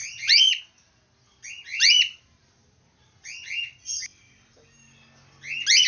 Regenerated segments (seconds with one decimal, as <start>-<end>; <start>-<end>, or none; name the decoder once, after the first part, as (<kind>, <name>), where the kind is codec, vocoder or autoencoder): 0.0-0.6 (vocoder, BigVGAN v2); 1.7-2.5